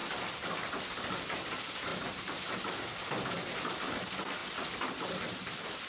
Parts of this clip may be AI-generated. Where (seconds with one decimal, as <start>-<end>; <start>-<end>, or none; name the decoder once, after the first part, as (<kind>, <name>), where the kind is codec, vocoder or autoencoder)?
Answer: 1.9-2.5 (vocoder, BigVGAN v2)